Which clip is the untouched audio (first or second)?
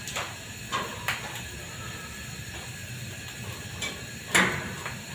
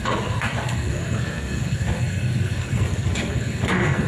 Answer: first